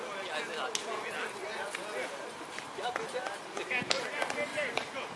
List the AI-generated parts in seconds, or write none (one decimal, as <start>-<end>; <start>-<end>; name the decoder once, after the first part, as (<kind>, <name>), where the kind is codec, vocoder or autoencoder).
4.5-5.2 (vocoder, BigVGAN v2)